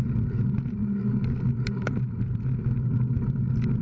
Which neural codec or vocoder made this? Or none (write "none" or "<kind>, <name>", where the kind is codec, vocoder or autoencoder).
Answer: none